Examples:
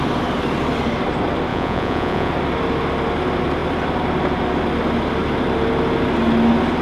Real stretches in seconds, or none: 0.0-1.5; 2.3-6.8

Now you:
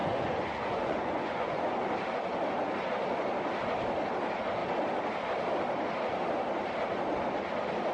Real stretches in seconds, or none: 1.6-7.9

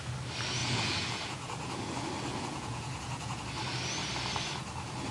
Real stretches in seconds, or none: 0.0-0.6; 1.8-2.3; 3.4-5.1

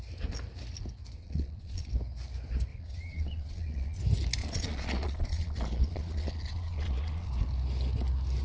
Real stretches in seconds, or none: 0.0-1.2; 1.9-2.7; 4.0-4.4; 7.3-8.4